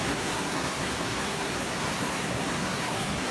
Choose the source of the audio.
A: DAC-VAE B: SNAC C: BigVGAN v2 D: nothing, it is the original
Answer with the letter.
B